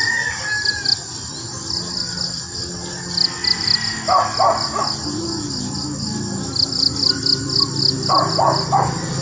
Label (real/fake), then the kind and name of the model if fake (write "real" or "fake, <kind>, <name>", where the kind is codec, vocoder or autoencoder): real